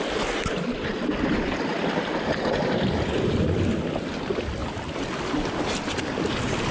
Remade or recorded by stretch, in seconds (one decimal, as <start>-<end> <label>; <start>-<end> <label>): 0.0-1.7 recorded; 1.7-3.4 remade; 3.4-4.6 recorded; 4.6-5.6 remade; 5.6-6.7 recorded